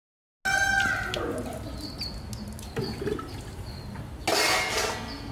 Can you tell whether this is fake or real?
real